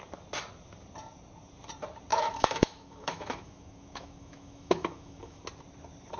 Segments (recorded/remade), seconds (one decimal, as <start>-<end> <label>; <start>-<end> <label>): 0.0-2.1 recorded; 2.1-5.4 remade; 5.4-6.2 recorded